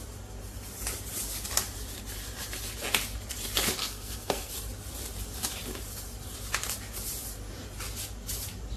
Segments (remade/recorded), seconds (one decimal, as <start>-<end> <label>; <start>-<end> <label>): 0.0-3.8 recorded; 3.8-4.5 remade; 4.5-8.8 recorded